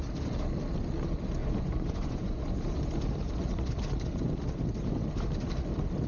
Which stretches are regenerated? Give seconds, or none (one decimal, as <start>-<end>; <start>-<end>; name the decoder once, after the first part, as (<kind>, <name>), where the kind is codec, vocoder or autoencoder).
1.4-2.4 (vocoder, Vocos)